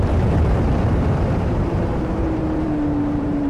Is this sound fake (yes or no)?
yes